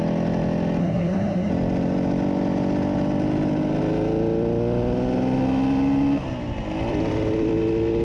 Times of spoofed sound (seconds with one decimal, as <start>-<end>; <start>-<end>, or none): 0.8-1.5